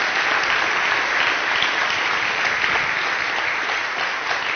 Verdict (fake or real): real